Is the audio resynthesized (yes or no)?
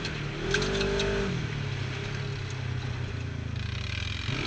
no